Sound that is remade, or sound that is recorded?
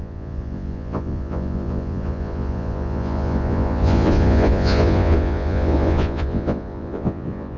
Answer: remade